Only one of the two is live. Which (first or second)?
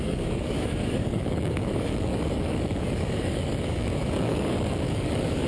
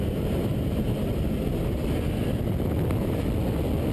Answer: second